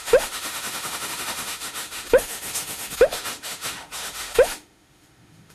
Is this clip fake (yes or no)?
yes